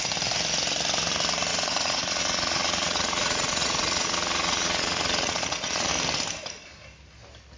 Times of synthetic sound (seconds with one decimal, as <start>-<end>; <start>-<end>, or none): 1.5-5.9